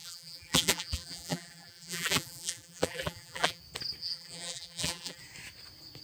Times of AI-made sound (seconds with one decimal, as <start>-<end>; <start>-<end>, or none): 0.0-3.6; 4.0-5.2